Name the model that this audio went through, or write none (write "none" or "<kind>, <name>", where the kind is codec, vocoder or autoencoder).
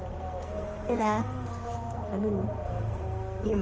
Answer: codec, SNAC